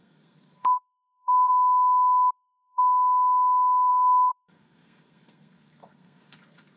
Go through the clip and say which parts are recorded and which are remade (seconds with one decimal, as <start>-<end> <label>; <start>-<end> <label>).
0.0-1.5 remade; 1.5-2.3 recorded; 2.3-6.8 remade